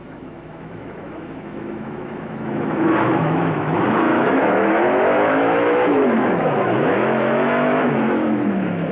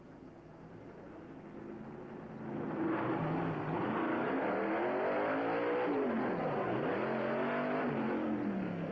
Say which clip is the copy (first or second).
first